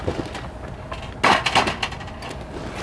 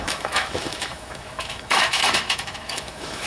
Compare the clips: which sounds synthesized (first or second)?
second